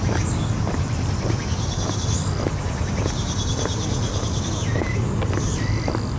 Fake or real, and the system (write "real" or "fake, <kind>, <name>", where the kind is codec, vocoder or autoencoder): real